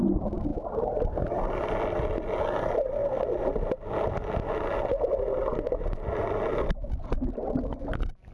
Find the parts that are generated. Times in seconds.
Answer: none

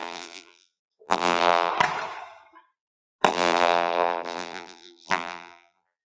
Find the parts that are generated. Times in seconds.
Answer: 0.0-1.7 (vocoder, BigVGAN v2); 3.3-6.0

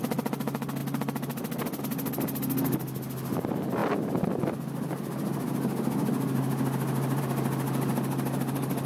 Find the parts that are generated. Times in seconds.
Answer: none